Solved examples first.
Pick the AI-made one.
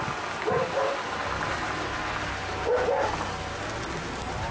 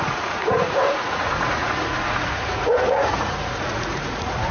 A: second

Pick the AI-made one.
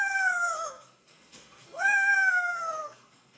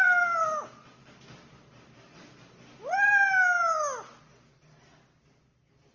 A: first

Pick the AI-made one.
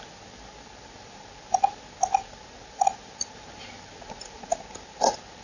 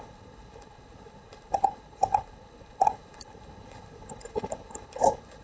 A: second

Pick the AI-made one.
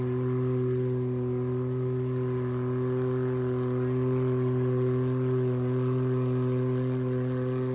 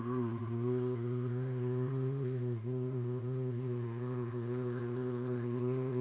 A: second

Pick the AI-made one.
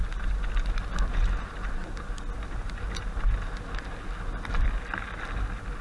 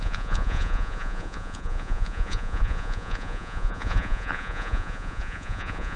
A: second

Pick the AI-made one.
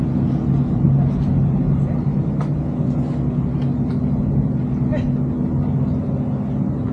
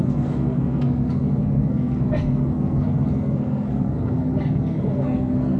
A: second